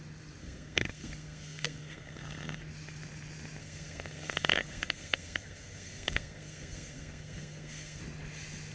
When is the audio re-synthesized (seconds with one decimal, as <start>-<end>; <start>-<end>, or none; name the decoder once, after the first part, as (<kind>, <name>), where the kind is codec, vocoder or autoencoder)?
0.4-2.6 (codec, SNAC); 3.6-8.0